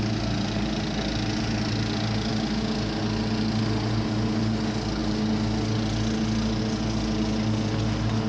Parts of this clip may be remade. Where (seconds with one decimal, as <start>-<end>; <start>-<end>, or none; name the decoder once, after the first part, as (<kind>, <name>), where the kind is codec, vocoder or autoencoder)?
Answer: none